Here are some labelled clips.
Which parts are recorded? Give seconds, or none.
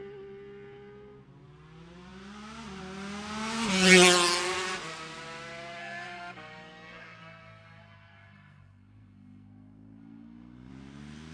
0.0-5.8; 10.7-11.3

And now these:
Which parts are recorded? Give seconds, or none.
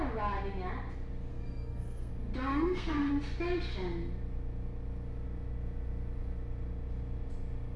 0.0-1.3; 2.1-2.5; 3.1-7.8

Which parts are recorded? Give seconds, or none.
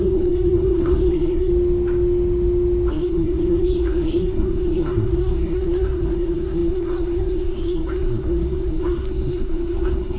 1.5-2.9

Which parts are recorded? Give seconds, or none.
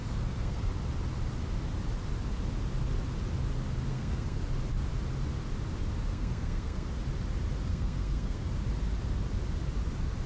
0.7-3.9; 4.4-6.1; 6.9-7.7; 8.5-10.3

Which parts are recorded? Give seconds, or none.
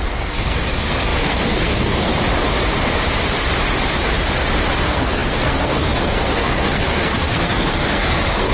2.1-4.8